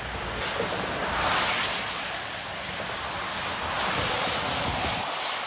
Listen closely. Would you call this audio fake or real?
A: real